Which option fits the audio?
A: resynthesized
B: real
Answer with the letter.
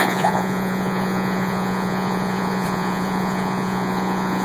A